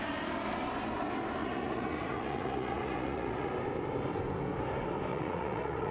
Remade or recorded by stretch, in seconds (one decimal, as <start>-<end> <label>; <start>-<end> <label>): 0.0-1.4 recorded; 1.4-3.5 remade; 3.5-5.1 recorded; 5.1-5.9 remade